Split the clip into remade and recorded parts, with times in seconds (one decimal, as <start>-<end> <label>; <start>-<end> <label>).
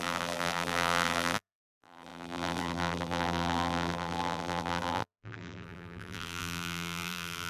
0.0-7.5 remade